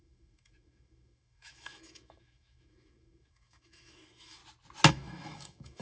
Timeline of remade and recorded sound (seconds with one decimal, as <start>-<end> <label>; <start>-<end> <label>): 0.0-4.4 remade; 4.4-4.9 recorded; 4.9-5.8 remade